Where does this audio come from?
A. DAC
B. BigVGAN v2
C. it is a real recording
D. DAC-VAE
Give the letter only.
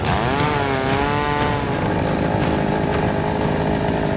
C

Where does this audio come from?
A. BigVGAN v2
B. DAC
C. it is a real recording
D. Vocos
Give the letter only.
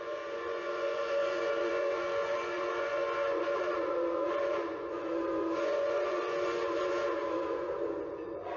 D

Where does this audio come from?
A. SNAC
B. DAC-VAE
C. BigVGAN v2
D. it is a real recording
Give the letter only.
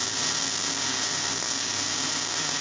D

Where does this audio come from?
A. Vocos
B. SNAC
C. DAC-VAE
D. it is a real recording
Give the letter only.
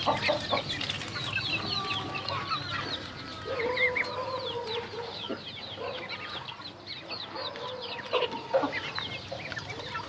D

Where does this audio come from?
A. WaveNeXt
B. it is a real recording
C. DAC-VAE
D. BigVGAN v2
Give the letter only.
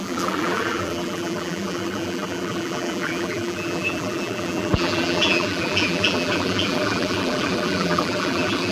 D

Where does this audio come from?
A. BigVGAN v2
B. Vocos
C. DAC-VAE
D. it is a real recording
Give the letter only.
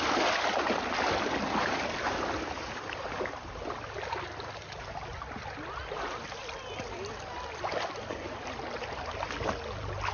D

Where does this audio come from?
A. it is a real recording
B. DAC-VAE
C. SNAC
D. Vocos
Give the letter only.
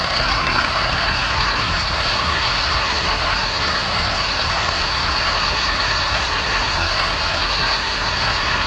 C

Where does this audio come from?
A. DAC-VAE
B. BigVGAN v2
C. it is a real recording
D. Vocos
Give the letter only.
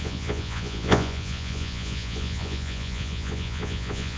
D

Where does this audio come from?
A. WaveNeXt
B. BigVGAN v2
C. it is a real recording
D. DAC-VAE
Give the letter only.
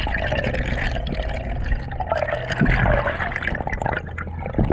C